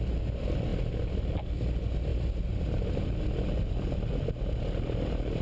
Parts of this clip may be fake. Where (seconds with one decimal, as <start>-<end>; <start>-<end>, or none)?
none

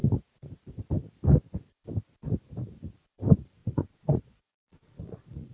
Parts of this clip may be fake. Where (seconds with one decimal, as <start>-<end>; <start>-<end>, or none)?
3.6-5.5

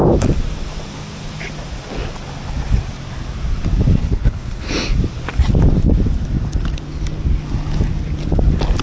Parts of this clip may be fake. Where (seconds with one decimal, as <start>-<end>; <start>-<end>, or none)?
4.0-4.7